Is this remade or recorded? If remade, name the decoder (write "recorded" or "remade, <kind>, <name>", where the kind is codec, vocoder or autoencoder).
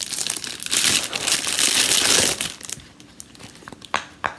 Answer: recorded